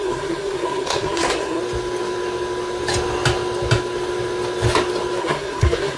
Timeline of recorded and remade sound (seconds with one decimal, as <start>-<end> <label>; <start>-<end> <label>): 0.0-1.6 remade; 1.6-5.2 recorded; 5.2-6.0 remade

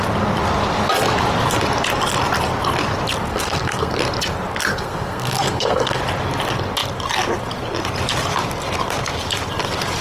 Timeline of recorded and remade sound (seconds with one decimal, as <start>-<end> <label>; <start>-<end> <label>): 0.0-3.3 recorded; 3.3-4.0 remade; 4.0-4.7 recorded; 4.7-6.0 remade; 6.0-10.0 recorded

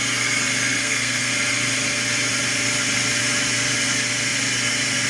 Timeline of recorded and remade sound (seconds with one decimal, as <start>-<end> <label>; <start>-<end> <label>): 0.0-0.7 recorded; 0.7-1.3 remade; 1.3-5.1 recorded

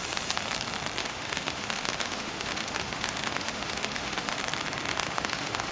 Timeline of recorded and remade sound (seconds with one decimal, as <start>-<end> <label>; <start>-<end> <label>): 0.0-1.0 recorded; 1.0-4.4 remade; 4.4-4.9 recorded; 4.9-5.7 remade

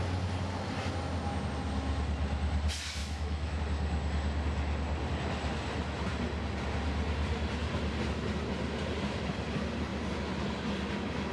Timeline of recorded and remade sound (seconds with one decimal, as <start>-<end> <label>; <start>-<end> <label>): 0.0-3.0 recorded; 3.0-3.6 remade; 3.6-11.3 recorded